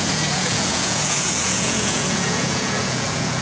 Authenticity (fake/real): fake